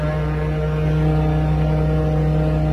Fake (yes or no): no